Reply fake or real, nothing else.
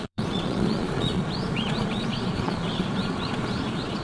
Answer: fake